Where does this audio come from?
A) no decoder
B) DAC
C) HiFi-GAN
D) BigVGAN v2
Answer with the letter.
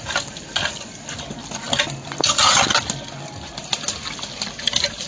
A